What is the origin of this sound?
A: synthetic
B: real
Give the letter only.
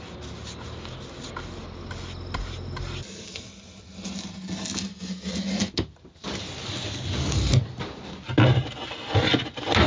B